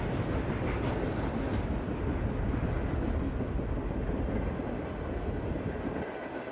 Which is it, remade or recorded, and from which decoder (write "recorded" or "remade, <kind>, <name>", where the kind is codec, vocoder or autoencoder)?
recorded